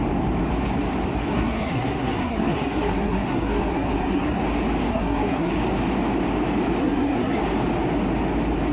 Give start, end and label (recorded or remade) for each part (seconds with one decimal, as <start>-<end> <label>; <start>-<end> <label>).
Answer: 0.0-1.3 recorded; 1.3-4.4 remade; 4.4-4.9 recorded; 4.9-5.5 remade; 5.5-6.8 recorded; 6.8-7.4 remade; 7.4-8.7 recorded